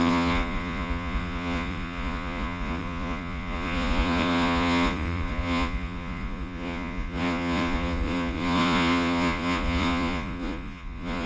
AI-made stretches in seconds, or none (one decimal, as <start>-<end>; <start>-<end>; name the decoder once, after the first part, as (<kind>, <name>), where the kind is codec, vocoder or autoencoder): 0.0-11.3 (vocoder, Vocos)